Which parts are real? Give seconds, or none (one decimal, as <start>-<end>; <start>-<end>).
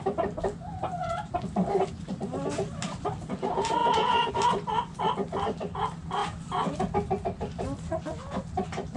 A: 0.0-3.8; 4.3-9.0